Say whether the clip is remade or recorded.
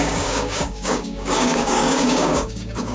remade